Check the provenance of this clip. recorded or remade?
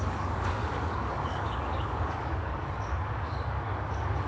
remade